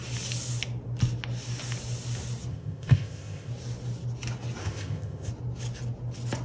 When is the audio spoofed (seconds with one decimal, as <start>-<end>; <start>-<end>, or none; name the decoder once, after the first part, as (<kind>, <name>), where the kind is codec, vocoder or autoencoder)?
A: 2.5-3.5 (codec, ZipCodec); 4.6-5.3